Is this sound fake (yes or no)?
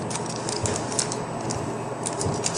no